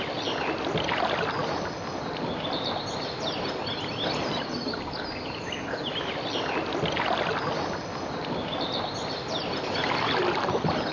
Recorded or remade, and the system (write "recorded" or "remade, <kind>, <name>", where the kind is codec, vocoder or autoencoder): recorded